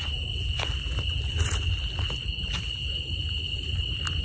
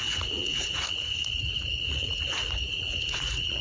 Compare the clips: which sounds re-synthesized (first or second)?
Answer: second